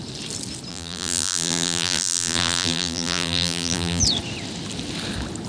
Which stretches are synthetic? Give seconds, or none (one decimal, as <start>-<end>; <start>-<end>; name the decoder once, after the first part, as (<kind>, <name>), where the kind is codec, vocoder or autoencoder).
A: 0.7-4.0 (vocoder, BigVGAN v2)